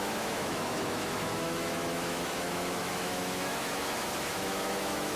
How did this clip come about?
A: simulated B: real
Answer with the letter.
A